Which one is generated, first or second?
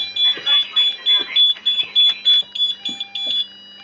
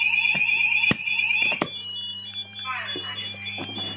second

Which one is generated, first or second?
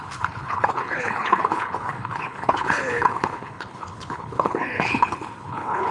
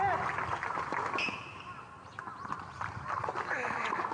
first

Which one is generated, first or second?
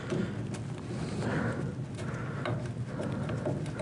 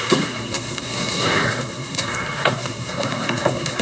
second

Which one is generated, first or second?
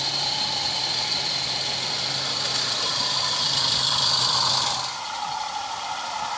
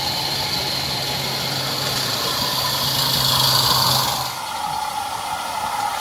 first